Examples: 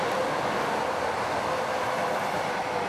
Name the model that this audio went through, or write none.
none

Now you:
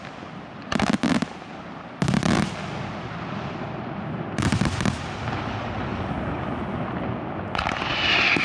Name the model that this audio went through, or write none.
none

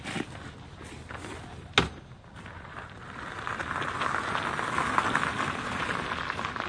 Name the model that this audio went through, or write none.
none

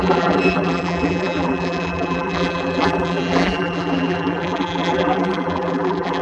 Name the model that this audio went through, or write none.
vocoder, BigVGAN v2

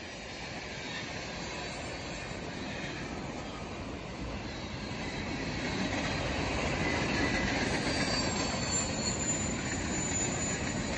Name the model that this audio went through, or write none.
none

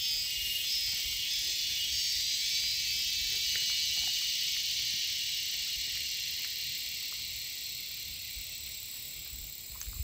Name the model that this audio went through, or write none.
none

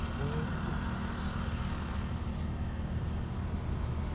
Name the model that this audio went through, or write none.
none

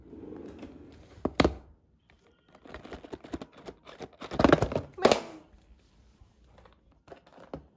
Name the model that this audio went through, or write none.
none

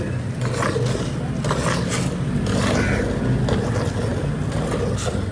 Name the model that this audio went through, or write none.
none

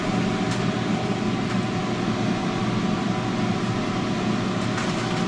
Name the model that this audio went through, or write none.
none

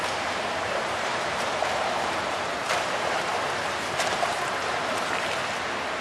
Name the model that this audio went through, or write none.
vocoder, BigVGAN v2